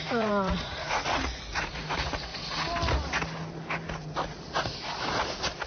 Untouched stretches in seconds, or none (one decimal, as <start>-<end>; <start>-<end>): 2.3-5.7